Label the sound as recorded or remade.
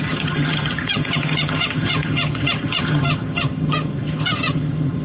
remade